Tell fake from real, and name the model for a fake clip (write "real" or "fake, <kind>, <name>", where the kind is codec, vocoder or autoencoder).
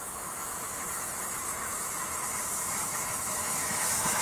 fake, autoencoder, DAC-VAE